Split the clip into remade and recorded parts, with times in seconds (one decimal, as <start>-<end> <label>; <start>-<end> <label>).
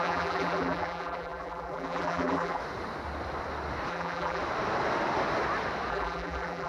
0.0-2.6 remade; 2.6-3.9 recorded; 3.9-4.4 remade; 4.4-5.9 recorded; 5.9-6.7 remade